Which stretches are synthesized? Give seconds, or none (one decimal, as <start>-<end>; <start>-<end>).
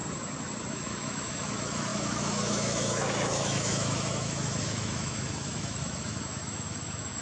0.7-7.2